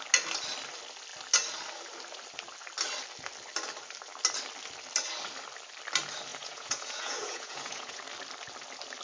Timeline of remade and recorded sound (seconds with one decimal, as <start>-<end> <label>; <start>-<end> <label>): 0.0-6.3 recorded; 6.3-8.0 remade; 8.0-9.0 recorded